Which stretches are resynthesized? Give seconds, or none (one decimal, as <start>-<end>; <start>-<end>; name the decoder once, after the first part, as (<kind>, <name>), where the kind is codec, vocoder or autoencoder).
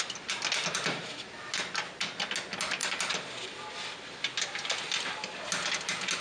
none